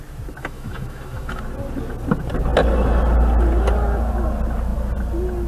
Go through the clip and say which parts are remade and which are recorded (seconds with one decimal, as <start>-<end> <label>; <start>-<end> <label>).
0.0-0.4 recorded; 0.4-1.4 remade; 1.4-5.5 recorded